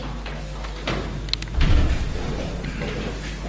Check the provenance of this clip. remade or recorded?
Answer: recorded